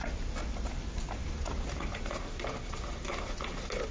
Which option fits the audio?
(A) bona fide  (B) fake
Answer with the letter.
A